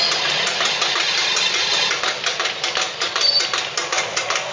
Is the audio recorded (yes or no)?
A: yes